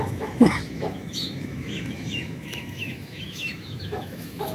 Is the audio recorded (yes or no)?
no